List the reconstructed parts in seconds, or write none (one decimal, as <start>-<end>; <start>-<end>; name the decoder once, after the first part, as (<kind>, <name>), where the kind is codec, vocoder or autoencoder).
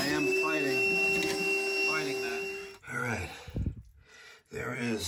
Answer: 2.3-3.4 (vocoder, BigVGAN v2); 3.9-5.1